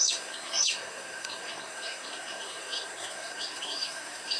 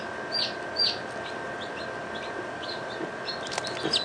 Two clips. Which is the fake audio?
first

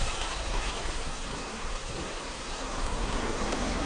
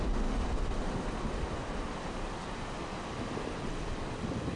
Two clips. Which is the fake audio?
first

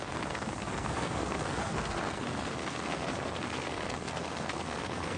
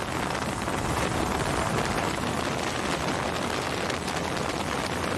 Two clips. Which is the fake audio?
first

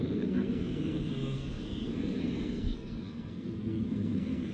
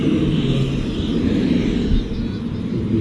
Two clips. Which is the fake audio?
first